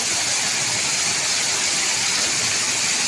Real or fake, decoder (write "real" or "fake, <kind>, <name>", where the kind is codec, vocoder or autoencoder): real